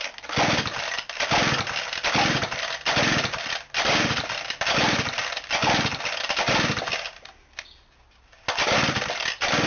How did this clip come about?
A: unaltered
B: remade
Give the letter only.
A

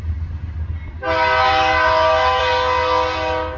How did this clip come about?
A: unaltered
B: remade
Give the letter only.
A